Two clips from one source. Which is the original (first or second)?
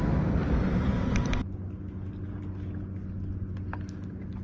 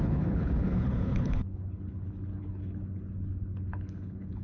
first